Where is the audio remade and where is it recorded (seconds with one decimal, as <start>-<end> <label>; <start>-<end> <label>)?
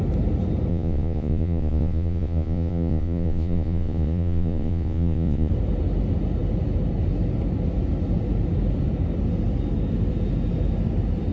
0.0-0.7 recorded; 0.7-5.5 remade; 5.5-11.3 recorded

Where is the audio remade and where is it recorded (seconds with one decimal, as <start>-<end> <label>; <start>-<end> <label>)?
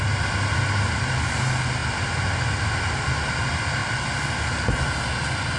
0.0-3.8 recorded; 3.8-4.5 remade; 4.5-5.6 recorded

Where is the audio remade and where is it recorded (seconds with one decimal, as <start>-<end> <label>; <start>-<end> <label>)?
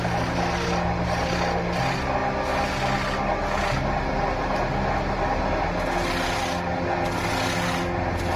0.0-8.4 recorded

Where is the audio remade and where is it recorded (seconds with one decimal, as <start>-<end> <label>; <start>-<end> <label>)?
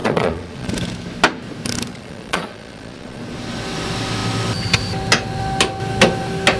0.0-0.7 remade; 0.7-1.9 recorded; 1.9-3.2 remade; 3.2-6.6 recorded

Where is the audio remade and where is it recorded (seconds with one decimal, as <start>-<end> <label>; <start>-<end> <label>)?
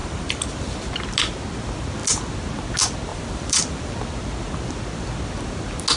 0.0-0.6 remade; 0.6-3.1 recorded; 3.1-3.9 remade; 3.9-6.0 recorded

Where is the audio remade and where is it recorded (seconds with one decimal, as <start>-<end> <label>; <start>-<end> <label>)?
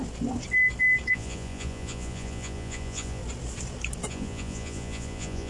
0.0-1.1 recorded; 1.1-3.2 remade; 3.2-4.1 recorded; 4.1-5.5 remade